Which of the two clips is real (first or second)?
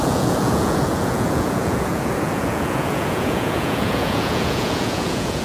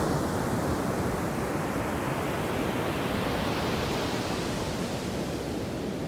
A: second